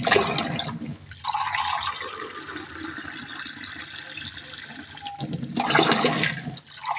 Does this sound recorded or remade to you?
recorded